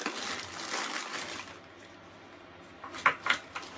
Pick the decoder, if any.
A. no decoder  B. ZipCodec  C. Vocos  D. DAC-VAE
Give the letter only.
A